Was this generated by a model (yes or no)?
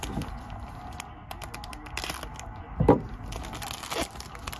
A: no